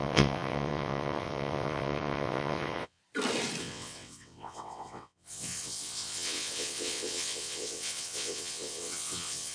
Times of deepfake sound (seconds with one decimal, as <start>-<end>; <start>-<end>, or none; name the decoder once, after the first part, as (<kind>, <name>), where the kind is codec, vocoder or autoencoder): 0.0-3.0 (vocoder, WaveNeXt); 3.6-9.5